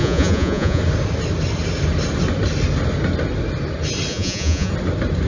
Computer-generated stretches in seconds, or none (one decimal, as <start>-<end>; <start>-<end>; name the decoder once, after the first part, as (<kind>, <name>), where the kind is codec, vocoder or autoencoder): 0.0-0.8 (vocoder, Vocos); 4.1-4.7